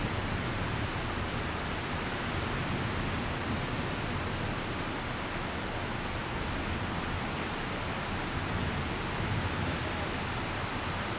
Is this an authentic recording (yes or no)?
yes